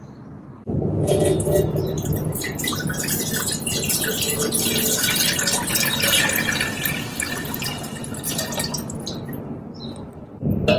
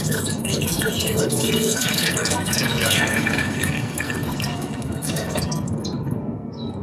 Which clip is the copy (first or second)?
second